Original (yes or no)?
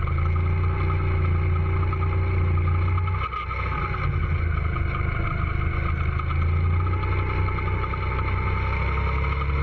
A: yes